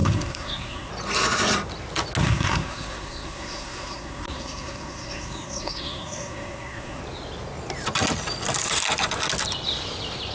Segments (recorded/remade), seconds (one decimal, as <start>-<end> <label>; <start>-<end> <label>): 0.0-0.9 remade; 0.9-2.2 recorded; 2.2-7.0 remade; 7.0-10.3 recorded